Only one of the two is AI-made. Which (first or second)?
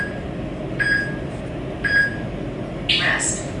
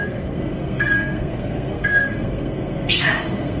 second